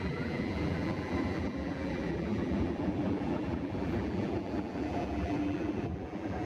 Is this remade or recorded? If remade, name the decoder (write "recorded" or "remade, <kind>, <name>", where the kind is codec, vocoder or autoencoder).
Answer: remade, vocoder, BigVGAN v2